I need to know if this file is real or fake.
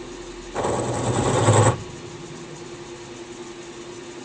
real